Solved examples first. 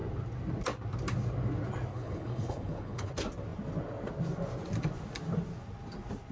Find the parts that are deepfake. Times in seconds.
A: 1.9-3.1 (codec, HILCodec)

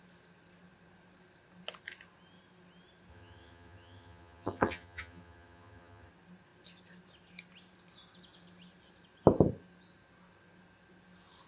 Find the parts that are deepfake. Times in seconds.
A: 3.1-6.1 (vocoder, HiFi-GAN)

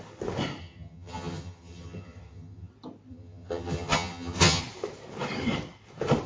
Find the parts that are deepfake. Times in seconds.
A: 0.6-2.7 (vocoder, HiFi-GAN); 3.1-4.6

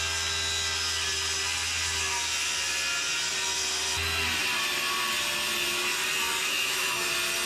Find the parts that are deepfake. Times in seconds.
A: 6.4-7.1 (autoencoder, DAC-VAE)

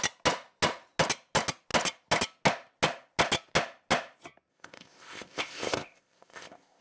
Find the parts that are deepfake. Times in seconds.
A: 4.5-6.8 (codec, ZipCodec)

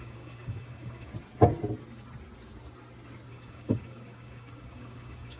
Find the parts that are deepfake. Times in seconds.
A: 0.0-1.1 (codec, DAC); 3.3-5.4

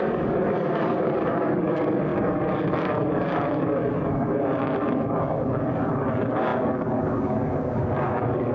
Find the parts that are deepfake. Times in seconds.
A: 0.0-8.5 (codec, DAC)